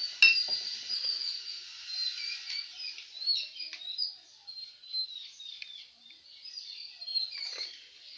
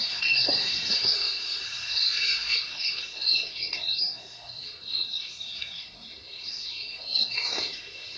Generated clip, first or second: second